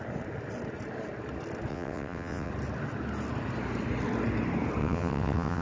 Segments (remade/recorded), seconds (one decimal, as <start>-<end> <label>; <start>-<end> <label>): 0.0-1.7 recorded; 1.7-2.5 remade; 2.5-4.8 recorded; 4.8-5.6 remade